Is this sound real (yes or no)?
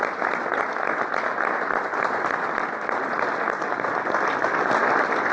yes